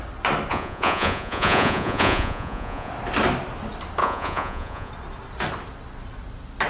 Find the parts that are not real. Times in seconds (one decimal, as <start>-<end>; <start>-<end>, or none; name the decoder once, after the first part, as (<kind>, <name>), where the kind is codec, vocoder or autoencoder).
0.5-2.9 (vocoder, Vocos); 4.0-4.9